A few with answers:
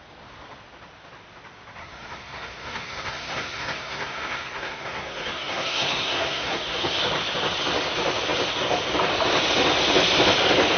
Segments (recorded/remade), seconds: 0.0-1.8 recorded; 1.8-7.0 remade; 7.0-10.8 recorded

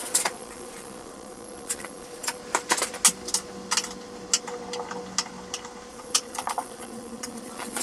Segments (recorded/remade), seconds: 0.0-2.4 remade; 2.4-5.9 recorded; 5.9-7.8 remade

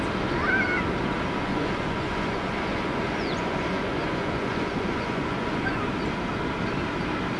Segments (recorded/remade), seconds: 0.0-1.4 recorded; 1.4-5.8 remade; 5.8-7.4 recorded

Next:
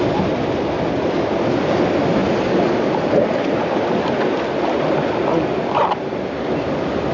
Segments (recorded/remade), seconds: 0.0-7.1 recorded

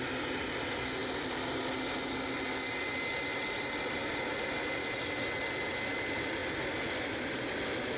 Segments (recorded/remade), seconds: 0.0-8.0 recorded

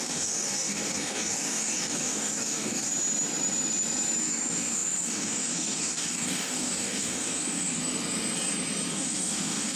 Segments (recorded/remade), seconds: 0.0-2.9 remade; 2.9-4.2 recorded; 4.2-7.8 remade; 7.8-8.9 recorded; 8.9-9.8 remade